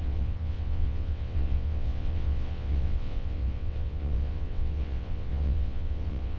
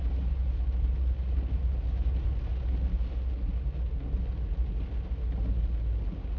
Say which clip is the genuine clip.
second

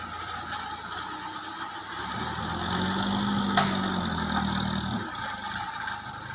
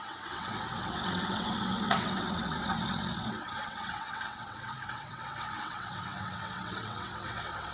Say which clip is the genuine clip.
first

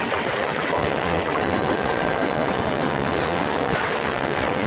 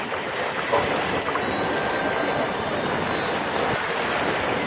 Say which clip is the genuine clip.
second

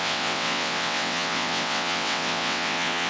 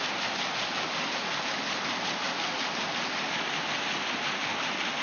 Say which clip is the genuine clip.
second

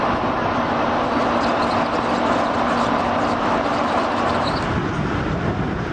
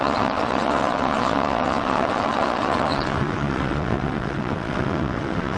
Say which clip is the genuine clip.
first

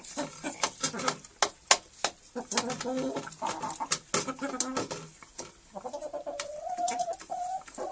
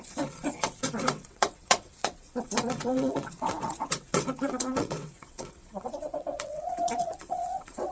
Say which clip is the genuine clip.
first